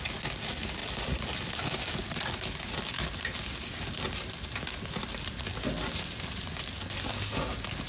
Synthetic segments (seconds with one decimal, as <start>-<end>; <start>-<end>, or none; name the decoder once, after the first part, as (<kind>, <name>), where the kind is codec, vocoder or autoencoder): none